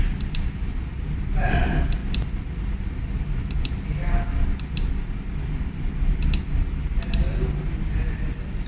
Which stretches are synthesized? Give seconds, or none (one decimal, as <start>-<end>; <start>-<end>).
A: none